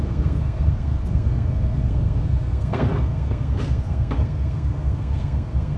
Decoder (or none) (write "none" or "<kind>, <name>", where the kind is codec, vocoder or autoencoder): codec, SNAC